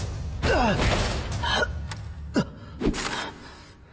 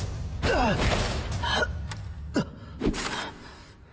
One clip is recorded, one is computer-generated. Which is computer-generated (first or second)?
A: second